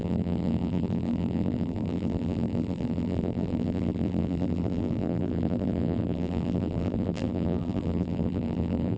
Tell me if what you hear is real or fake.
fake